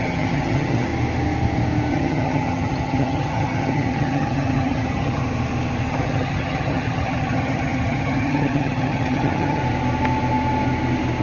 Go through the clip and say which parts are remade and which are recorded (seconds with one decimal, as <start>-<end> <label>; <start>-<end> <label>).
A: 0.0-0.9 remade; 0.9-1.9 recorded; 1.9-5.2 remade; 5.2-5.9 recorded; 5.9-9.6 remade; 9.6-11.2 recorded